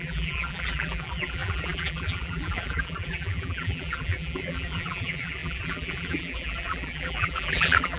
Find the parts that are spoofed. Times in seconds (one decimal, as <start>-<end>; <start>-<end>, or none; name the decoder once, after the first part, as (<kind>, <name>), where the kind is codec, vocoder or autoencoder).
0.0-8.0 (vocoder, BigVGAN v2)